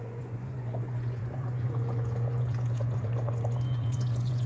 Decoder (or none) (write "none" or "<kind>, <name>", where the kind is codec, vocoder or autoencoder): vocoder, Vocos